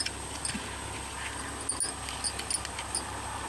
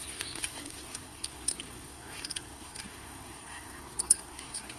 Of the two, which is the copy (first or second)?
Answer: second